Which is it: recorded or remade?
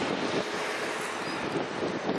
recorded